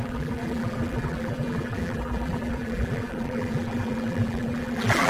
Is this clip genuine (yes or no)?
no